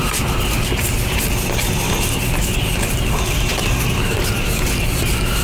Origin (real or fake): real